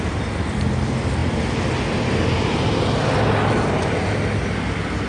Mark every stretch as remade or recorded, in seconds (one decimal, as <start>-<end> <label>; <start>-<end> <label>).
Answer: 0.0-5.1 recorded